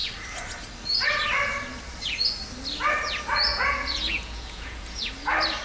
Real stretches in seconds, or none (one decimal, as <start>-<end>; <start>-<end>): 0.0-3.5; 5.1-5.6